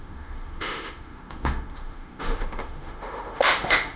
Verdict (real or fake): fake